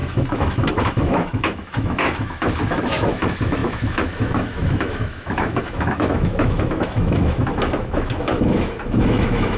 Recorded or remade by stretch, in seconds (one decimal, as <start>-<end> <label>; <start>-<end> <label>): 0.0-9.6 remade